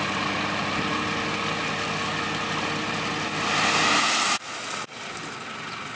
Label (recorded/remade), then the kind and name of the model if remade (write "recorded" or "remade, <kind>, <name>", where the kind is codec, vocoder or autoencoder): recorded